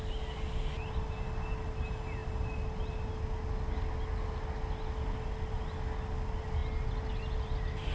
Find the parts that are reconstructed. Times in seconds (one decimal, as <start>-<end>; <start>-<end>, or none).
none